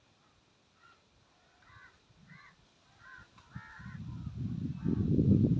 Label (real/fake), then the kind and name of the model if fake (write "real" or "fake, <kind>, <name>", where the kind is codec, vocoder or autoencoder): real